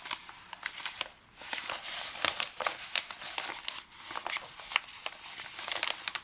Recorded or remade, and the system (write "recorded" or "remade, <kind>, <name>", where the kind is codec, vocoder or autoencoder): recorded